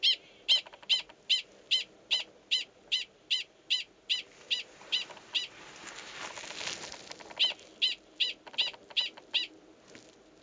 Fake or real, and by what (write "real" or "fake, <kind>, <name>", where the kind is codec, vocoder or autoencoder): real